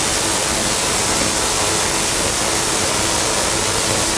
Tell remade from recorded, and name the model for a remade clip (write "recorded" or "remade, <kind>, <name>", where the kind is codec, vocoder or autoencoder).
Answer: recorded